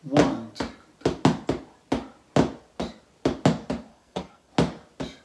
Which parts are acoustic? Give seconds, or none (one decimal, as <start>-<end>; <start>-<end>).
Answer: 0.0-3.9; 4.5-5.2